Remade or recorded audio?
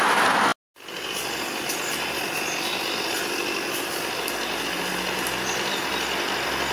recorded